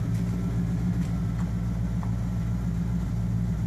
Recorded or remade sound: recorded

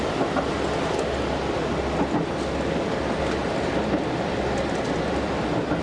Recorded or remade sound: recorded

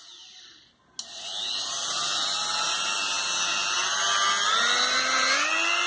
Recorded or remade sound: recorded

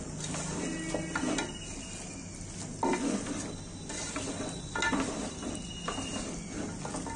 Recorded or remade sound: recorded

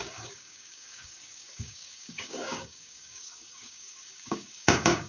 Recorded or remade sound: remade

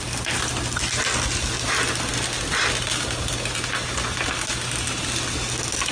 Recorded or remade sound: recorded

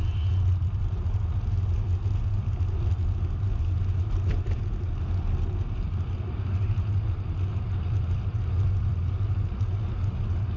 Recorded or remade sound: recorded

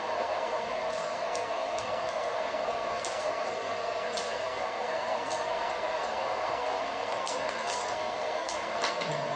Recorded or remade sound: remade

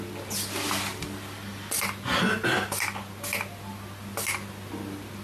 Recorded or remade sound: recorded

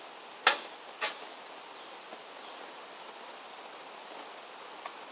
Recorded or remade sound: recorded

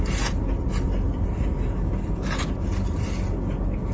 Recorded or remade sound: recorded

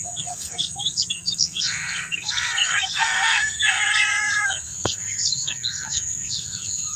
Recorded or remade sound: remade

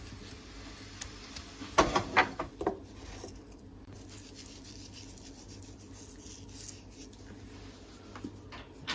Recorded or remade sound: recorded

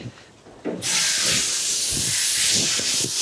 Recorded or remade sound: recorded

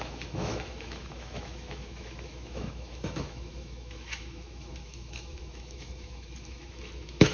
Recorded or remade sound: remade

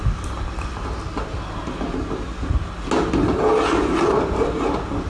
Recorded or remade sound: recorded